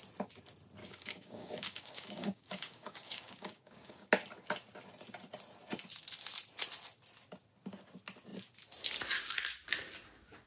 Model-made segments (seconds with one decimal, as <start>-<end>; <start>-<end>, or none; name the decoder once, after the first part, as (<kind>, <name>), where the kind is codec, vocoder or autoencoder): 0.8-4.1 (codec, DAC)